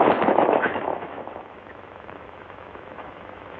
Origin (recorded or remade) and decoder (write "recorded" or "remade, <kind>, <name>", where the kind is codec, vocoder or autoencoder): remade, autoencoder, DAC-VAE